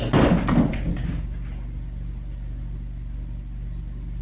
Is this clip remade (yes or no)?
no